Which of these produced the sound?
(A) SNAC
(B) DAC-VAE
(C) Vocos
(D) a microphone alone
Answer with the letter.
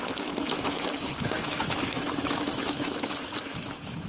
B